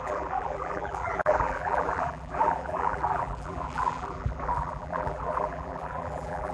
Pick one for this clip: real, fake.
fake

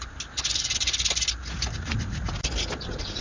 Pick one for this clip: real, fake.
real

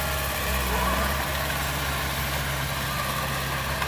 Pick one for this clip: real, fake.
real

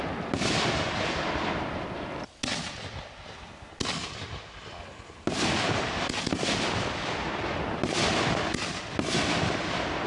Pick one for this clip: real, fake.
real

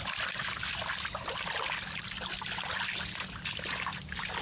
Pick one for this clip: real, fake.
real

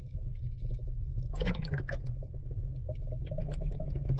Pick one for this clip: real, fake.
fake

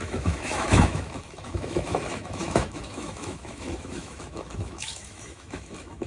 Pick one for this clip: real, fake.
fake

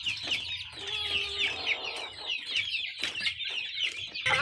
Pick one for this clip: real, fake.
real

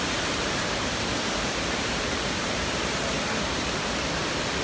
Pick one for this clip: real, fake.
fake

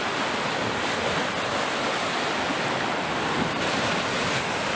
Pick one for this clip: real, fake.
real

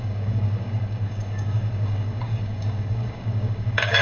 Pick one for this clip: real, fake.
fake